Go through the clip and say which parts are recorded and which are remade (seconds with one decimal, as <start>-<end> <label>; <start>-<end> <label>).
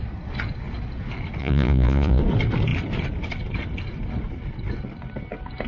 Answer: 0.0-1.4 recorded; 1.4-2.2 remade; 2.2-5.7 recorded